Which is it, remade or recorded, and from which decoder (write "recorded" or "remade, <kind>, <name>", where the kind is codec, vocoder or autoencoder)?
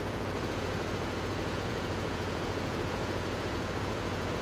remade, vocoder, Vocos